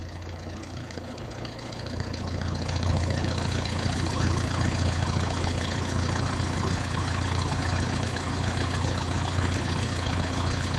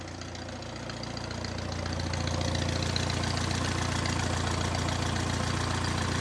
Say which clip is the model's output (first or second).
first